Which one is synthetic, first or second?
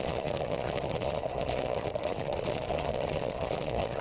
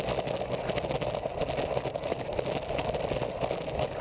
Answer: first